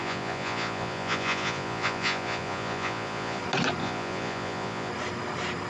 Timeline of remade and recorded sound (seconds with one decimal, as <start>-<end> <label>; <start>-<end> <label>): 0.0-3.4 remade; 3.4-3.8 recorded; 3.8-4.9 remade; 4.9-5.7 recorded